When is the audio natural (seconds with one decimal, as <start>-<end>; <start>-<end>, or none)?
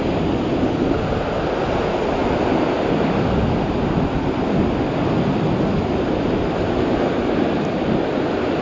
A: 0.0-8.6